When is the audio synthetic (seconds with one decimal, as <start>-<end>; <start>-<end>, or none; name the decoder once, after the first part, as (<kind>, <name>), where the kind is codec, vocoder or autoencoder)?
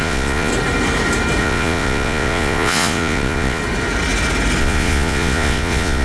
0.0-0.5 (vocoder, Vocos); 1.4-3.6; 4.6-6.0